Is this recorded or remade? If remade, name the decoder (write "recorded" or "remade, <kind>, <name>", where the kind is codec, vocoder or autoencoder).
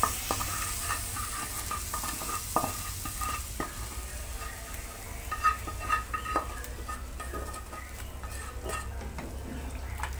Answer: recorded